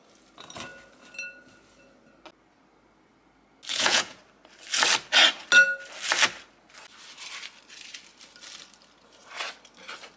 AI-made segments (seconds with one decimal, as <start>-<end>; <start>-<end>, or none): 3.7-4.2